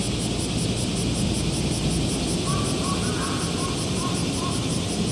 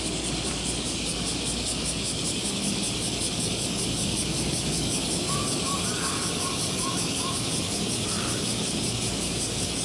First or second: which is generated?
second